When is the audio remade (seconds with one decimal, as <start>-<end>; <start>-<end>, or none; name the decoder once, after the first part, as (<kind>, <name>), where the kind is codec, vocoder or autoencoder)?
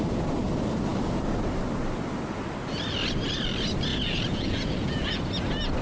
3.9-5.2 (vocoder, Vocos)